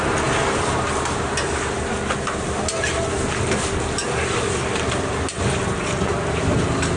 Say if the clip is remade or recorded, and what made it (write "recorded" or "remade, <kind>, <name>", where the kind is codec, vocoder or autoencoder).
recorded